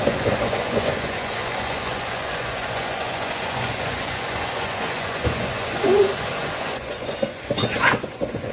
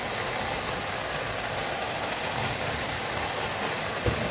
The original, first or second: second